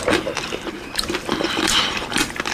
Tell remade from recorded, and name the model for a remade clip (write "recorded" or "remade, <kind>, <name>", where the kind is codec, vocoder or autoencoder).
remade, vocoder, BigVGAN v2